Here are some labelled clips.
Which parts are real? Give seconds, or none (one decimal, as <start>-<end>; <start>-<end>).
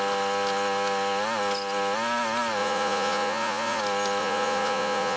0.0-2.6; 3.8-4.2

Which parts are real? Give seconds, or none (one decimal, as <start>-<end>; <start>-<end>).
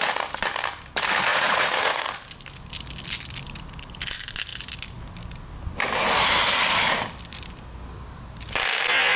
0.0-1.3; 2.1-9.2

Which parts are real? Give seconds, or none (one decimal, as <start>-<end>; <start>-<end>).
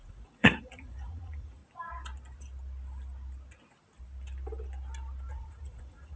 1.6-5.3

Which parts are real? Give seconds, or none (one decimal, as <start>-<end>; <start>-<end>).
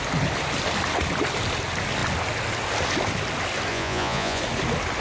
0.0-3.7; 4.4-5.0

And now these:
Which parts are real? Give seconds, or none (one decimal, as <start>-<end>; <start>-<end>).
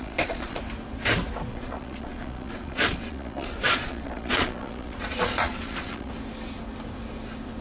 0.6-1.5; 6.1-7.6